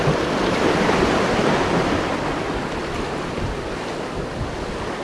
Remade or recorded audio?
recorded